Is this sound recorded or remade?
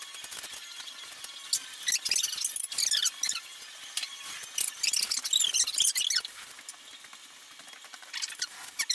recorded